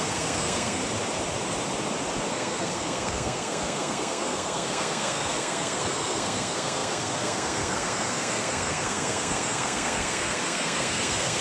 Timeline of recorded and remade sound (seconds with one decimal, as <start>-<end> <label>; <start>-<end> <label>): 0.0-0.8 remade; 0.8-2.3 recorded; 2.3-11.4 remade